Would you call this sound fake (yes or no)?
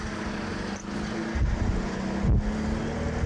no